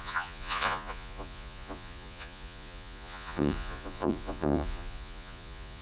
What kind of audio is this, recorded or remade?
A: remade